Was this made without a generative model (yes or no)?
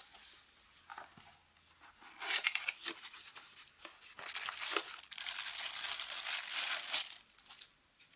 yes